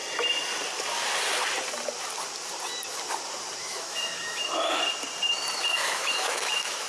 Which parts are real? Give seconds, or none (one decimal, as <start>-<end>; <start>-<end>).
0.0-3.6; 4.5-5.7